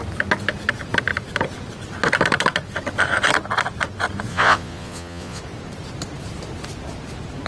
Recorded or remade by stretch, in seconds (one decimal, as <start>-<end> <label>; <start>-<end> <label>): 0.0-4.3 recorded; 4.3-5.4 remade; 5.4-7.5 recorded